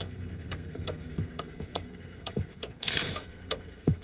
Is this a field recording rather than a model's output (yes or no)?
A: no